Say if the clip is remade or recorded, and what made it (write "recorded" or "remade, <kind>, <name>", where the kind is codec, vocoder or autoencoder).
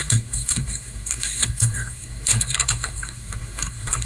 remade, codec, SNAC